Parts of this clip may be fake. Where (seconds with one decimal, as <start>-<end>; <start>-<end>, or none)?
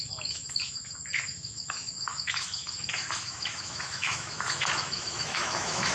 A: 0.0-5.9